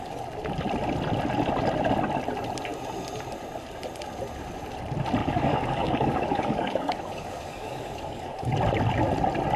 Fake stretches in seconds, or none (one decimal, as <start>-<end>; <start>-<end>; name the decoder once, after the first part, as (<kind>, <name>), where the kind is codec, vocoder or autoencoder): 5.2-8.5 (codec, DAC)